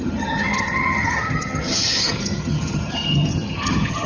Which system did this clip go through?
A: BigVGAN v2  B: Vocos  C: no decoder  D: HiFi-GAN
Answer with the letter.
D